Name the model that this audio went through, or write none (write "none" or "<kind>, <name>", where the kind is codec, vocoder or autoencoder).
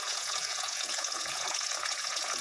vocoder, Vocos